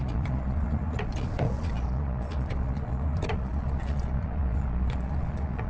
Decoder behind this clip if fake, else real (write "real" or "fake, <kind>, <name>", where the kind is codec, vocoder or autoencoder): fake, vocoder, Vocos